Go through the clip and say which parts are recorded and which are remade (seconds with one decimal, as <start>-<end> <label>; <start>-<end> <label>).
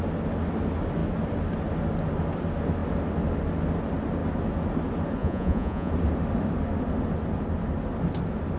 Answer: 0.0-5.2 recorded; 5.2-5.9 remade; 5.9-8.6 recorded